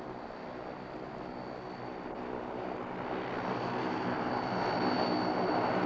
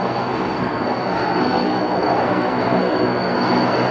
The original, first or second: first